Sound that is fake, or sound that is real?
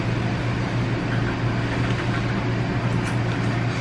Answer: real